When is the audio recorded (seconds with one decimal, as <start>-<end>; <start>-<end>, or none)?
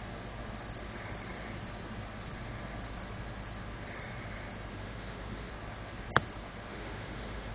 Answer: 0.0-4.7; 5.5-6.7